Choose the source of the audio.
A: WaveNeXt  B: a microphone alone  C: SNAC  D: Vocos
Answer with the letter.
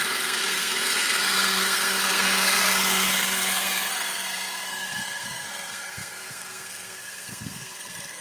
C